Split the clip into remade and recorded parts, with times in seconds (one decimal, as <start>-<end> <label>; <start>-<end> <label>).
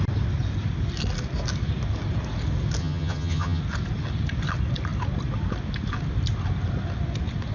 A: 0.0-2.8 recorded; 2.8-3.6 remade; 3.6-7.5 recorded